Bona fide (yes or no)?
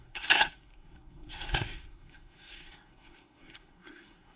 no